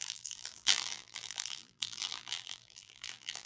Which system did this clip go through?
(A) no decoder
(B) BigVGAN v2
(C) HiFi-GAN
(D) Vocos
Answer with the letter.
B